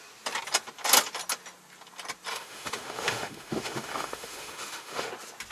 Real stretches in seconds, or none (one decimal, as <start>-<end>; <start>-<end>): 0.0-2.3; 5.1-5.5